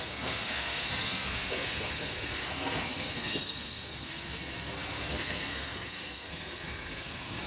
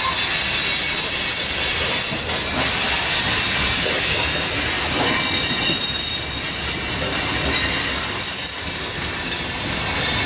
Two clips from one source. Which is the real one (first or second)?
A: second